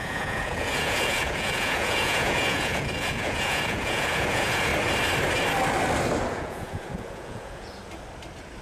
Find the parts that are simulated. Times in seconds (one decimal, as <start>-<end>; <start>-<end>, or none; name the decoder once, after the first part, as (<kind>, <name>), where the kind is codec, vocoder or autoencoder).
0.0-4.7 (vocoder, Vocos); 6.3-7.8

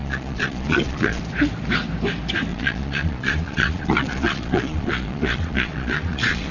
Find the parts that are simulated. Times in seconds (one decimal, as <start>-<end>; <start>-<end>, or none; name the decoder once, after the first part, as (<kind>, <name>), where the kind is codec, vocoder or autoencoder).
0.0-1.2 (vocoder, Vocos); 2.5-6.5

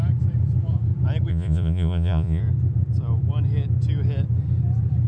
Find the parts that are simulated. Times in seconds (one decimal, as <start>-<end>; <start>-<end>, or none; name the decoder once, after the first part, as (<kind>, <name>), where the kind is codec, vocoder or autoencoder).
1.3-2.4 (vocoder, Vocos)

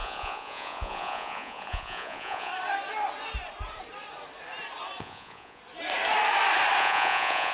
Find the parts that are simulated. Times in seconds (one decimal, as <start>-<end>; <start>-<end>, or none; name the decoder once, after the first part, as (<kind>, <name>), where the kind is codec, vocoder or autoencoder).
0.0-2.5 (vocoder, Vocos); 5.0-5.6; 6.8-7.5